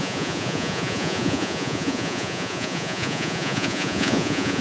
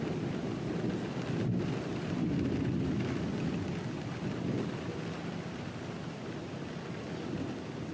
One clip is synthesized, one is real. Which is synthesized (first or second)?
first